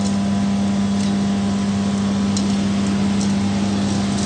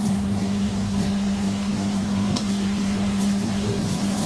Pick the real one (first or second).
first